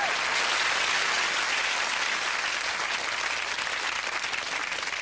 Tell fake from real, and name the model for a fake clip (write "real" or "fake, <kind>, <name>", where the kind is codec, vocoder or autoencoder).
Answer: real